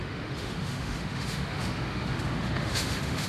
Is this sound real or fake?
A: fake